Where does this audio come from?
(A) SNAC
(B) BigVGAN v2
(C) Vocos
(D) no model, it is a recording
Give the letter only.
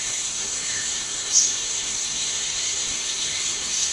A